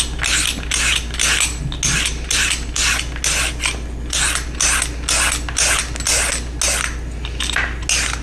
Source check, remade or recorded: recorded